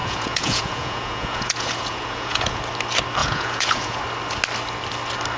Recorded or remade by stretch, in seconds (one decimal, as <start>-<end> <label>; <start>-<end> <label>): 0.0-2.6 remade; 2.6-3.2 recorded; 3.2-4.0 remade; 4.0-5.4 recorded